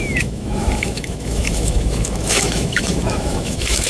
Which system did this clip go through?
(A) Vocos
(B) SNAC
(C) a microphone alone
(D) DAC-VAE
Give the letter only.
D